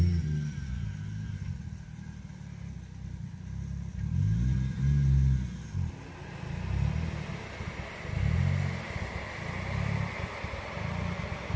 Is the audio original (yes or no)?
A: yes